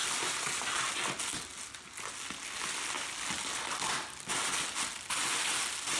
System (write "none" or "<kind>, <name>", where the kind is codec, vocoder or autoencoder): none